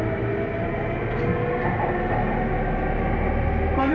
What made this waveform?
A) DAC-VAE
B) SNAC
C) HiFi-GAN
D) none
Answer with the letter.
D